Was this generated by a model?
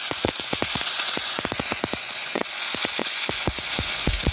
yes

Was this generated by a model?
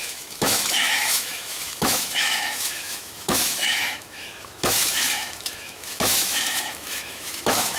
yes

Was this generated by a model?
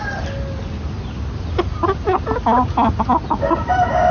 no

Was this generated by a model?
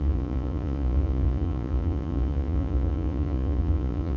yes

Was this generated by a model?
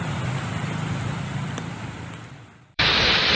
yes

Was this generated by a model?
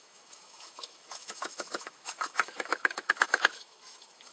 yes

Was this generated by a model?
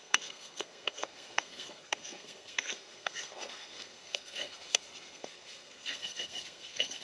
yes